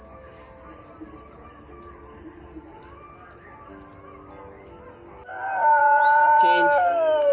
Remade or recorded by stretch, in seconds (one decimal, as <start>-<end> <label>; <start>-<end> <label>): 0.0-5.7 recorded; 5.7-6.4 remade; 6.4-7.3 recorded